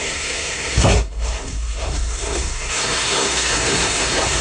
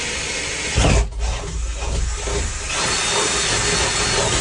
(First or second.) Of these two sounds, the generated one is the first